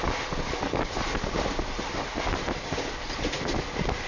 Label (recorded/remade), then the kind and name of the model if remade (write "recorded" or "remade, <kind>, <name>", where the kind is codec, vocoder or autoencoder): recorded